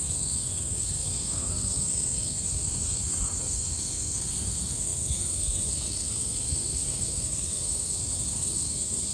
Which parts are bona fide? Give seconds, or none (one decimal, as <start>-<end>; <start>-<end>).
none